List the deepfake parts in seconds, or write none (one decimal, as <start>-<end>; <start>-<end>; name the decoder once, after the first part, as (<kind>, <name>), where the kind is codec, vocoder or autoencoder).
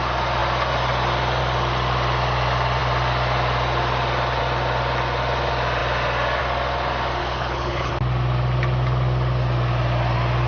7.2-7.9 (codec, HILCodec)